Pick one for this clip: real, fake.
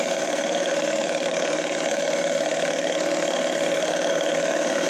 fake